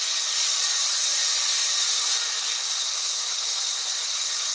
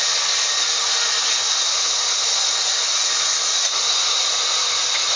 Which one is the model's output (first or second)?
first